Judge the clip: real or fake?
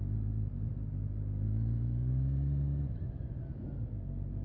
real